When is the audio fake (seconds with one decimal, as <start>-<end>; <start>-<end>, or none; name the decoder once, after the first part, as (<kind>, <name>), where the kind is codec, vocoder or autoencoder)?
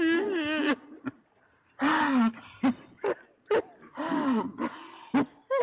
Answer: none